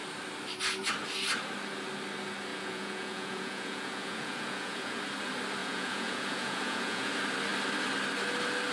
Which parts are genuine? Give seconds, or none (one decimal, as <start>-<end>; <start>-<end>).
0.0-2.5; 5.0-5.6; 7.1-8.7